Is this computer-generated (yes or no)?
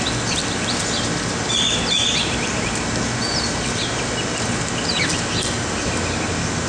no